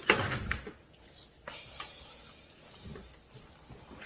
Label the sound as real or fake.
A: real